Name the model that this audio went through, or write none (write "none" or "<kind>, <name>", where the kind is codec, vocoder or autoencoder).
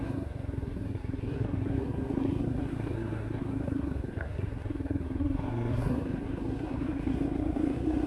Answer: codec, SNAC